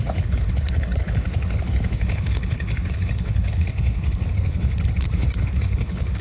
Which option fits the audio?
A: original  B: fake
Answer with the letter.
B